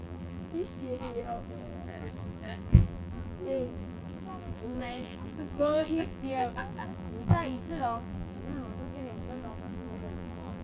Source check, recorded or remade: remade